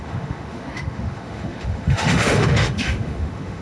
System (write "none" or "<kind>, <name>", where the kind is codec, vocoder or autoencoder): autoencoder, DAC-VAE